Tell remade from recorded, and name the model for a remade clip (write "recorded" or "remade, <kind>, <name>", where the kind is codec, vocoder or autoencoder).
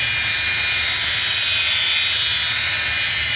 recorded